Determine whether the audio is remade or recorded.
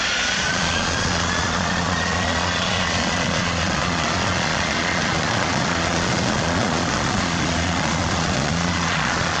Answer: remade